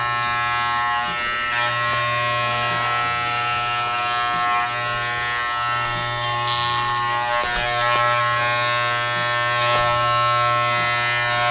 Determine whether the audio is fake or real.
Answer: real